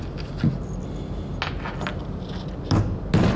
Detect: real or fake real